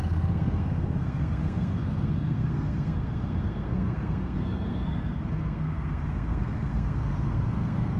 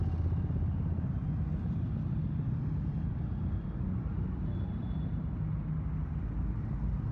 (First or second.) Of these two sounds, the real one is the second